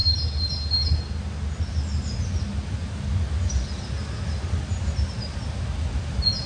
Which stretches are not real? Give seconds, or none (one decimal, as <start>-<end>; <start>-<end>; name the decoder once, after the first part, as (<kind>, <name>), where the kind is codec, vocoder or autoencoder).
none